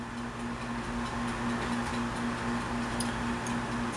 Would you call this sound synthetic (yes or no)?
no